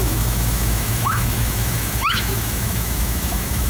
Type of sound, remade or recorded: remade